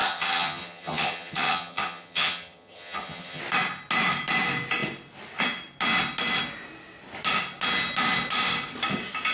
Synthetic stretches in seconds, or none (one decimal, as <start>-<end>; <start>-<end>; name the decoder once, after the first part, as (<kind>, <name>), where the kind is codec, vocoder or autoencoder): 0.0-3.4 (vocoder, HiFi-GAN)